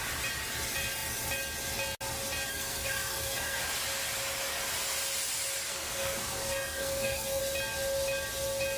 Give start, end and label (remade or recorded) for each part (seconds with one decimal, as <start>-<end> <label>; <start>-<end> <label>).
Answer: 0.0-2.5 recorded; 2.5-3.6 remade; 3.6-5.7 recorded; 5.7-7.4 remade; 7.4-8.8 recorded